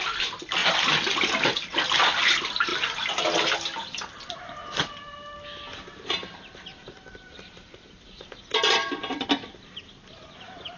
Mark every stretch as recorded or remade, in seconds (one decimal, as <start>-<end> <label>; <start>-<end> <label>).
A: 0.0-0.6 recorded; 0.6-2.2 remade; 2.2-6.7 recorded; 6.7-8.9 remade; 8.9-10.8 recorded